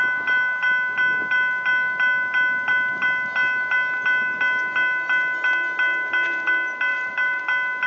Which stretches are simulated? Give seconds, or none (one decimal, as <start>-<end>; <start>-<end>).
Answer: 6.9-7.4

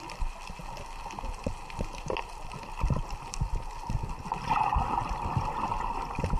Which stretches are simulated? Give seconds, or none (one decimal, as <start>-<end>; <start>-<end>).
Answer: none